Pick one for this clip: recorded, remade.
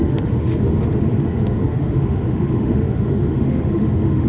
remade